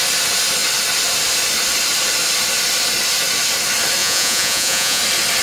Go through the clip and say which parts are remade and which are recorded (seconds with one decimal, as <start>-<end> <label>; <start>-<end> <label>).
0.0-4.0 recorded; 4.0-5.0 remade; 5.0-5.4 recorded